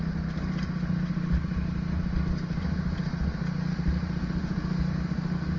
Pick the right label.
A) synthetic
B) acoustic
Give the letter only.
B